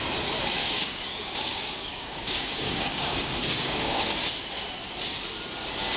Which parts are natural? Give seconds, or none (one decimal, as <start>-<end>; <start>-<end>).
0.0-0.6; 4.2-6.0